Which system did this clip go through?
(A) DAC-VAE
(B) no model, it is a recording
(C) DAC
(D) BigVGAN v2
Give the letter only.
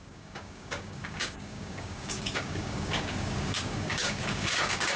C